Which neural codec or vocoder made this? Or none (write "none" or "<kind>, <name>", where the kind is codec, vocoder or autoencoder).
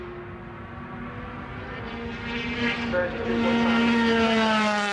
none